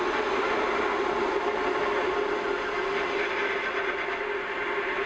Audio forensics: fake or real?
real